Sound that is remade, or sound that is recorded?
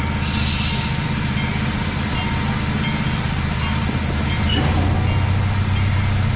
recorded